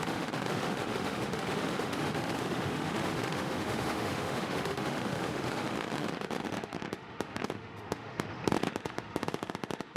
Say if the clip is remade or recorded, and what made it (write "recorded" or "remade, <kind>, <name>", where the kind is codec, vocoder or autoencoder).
remade, autoencoder, DAC-VAE